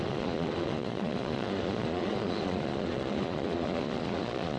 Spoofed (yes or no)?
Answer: yes